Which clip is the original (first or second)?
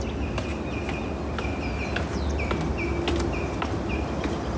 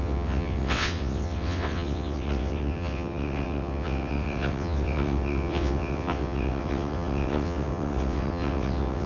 first